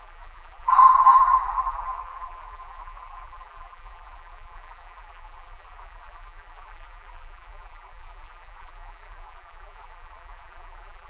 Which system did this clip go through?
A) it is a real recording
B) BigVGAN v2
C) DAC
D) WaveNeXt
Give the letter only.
B